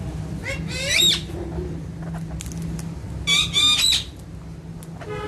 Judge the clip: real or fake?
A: real